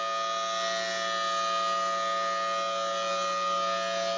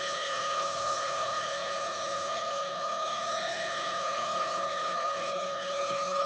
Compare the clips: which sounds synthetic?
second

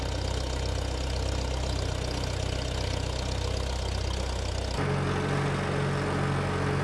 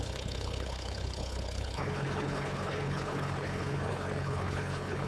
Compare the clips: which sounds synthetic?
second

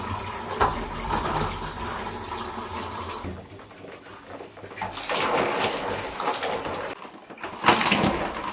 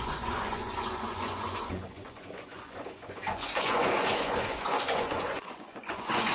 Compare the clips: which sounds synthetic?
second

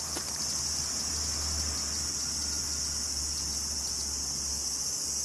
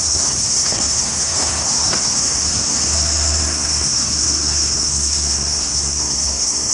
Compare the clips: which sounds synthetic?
second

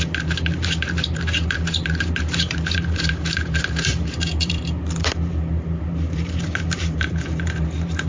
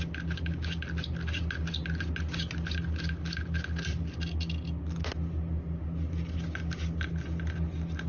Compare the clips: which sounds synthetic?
first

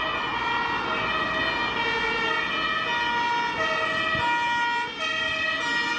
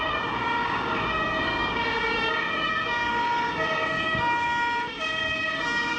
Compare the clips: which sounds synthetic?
second